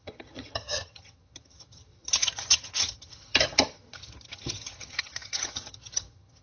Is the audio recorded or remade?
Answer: remade